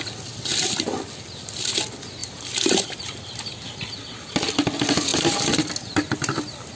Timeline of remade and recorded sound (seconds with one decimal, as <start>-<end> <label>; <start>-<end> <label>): 0.0-0.5 recorded; 0.5-1.2 remade; 1.2-2.2 recorded; 2.2-3.9 remade; 3.9-5.1 recorded; 5.1-6.8 remade